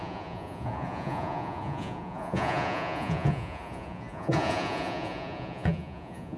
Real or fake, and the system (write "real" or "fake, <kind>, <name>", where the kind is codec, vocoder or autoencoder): fake, vocoder, Vocos